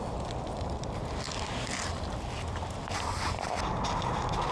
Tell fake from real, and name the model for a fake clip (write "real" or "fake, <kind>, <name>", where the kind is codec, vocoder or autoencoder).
real